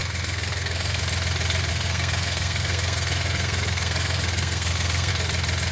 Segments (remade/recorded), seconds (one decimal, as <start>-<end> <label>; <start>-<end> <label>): 0.0-1.0 remade; 1.0-1.7 recorded; 1.7-5.1 remade; 5.1-5.7 recorded